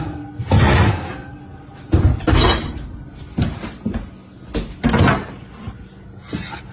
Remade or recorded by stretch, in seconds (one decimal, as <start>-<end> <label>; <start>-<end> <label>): 0.0-6.7 recorded